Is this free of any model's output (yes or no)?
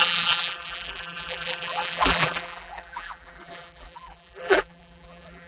no